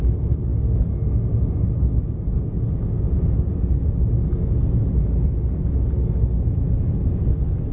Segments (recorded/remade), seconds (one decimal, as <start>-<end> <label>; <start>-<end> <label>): 0.0-7.7 recorded